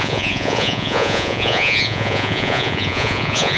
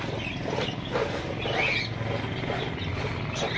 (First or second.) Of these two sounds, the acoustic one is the second